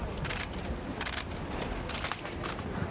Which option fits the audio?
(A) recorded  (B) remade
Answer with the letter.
A